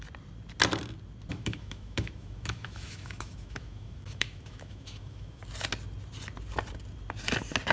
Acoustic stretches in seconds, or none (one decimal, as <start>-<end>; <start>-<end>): 0.0-1.3; 5.4-7.7